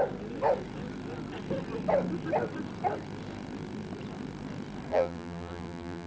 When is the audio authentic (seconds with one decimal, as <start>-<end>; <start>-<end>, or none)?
0.0-4.9